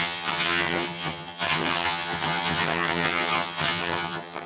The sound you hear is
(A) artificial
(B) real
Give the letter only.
A